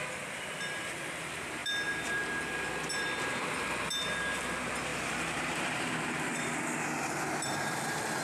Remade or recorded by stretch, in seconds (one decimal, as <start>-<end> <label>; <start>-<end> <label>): 0.0-8.2 remade

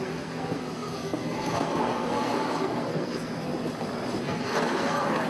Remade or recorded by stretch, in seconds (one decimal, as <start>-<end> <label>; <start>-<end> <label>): 0.0-3.5 remade; 3.5-4.2 recorded; 4.2-5.3 remade

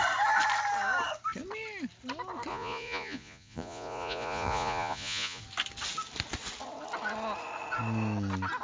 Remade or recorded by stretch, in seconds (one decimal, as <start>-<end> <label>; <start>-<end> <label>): 0.0-2.5 recorded; 2.5-5.4 remade; 5.4-8.6 recorded

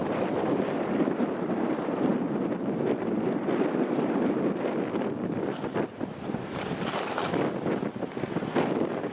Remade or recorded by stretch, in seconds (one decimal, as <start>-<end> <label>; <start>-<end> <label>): 0.0-0.6 remade; 0.6-2.1 recorded; 2.1-7.1 remade; 7.1-9.1 recorded

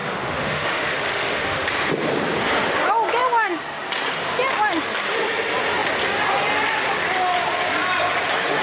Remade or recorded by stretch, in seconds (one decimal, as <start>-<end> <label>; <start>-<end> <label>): 0.0-1.7 remade; 1.7-8.6 recorded

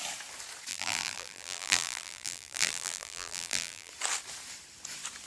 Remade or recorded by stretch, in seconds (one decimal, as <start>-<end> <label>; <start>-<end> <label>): 0.0-0.7 recorded; 0.7-3.9 remade; 3.9-5.3 recorded

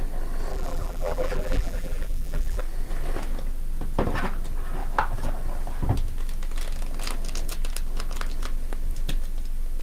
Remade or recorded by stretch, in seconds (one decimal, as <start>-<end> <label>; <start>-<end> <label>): 0.0-0.5 recorded; 0.5-2.6 remade; 2.6-9.8 recorded